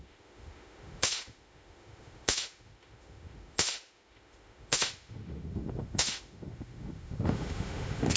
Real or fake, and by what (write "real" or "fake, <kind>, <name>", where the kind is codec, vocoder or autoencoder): fake, autoencoder, DAC-VAE